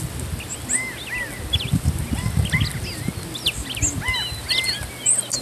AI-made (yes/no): no